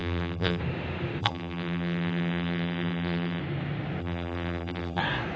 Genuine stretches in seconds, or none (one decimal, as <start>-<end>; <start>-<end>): 0.6-1.2; 3.4-4.0; 5.0-5.4